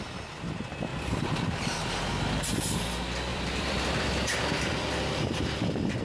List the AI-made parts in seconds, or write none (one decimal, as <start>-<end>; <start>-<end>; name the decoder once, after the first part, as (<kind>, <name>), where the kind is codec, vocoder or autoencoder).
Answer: 0.9-1.9 (vocoder, BigVGAN v2); 3.3-4.6